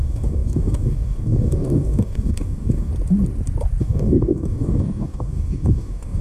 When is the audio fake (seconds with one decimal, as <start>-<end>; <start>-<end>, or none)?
0.0-2.9; 3.8-6.2